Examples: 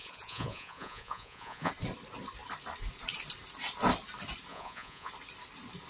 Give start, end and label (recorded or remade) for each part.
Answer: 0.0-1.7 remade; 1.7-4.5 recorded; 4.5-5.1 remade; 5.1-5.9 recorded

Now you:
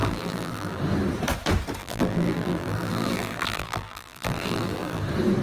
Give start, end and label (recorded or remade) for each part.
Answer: 0.0-0.8 remade; 0.8-1.8 recorded; 1.8-5.0 remade; 5.0-5.4 recorded

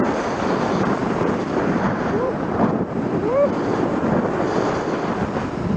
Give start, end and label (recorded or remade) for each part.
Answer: 0.0-1.0 recorded; 1.0-4.0 remade; 4.0-5.8 recorded

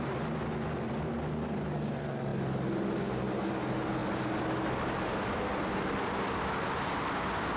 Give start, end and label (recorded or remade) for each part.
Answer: 0.0-7.6 recorded

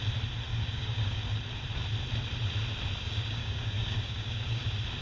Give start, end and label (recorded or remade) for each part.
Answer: 0.0-0.5 recorded; 0.5-1.2 remade; 1.2-3.0 recorded; 3.0-4.6 remade; 4.6-5.0 recorded

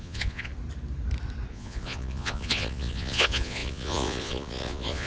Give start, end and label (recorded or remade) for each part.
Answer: 0.0-0.5 remade; 0.5-1.5 recorded; 1.5-5.1 remade

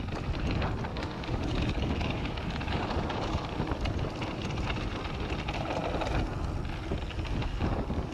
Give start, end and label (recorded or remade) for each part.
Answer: 0.0-0.9 recorded; 0.9-3.5 remade; 3.5-7.4 recorded; 7.4-8.1 remade